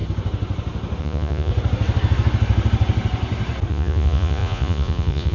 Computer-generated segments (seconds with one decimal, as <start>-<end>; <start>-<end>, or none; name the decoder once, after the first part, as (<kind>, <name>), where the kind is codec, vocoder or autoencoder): 1.0-1.5 (vocoder, Vocos); 3.7-5.3